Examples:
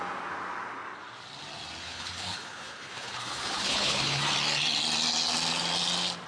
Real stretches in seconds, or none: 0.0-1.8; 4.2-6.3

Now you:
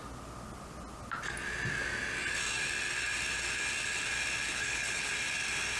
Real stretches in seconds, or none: 0.0-4.5; 5.1-5.8

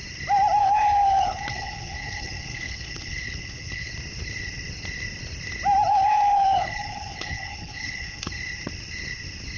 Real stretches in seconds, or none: 0.0-0.6; 3.9-5.9; 8.3-9.6

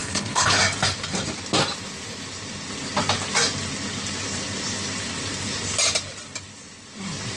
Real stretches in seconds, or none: 0.6-7.4